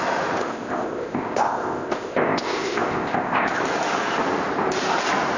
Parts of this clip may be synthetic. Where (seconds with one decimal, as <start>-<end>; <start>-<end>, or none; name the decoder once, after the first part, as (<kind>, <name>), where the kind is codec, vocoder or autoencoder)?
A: 0.4-3.6 (codec, ZipCodec)